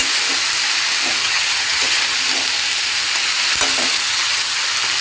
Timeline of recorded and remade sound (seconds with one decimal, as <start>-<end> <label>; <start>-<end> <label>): 0.0-1.2 recorded; 1.2-2.0 remade; 2.0-4.1 recorded; 4.1-4.6 remade; 4.6-5.0 recorded